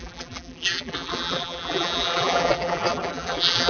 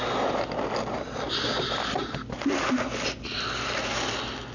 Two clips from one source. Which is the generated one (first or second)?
first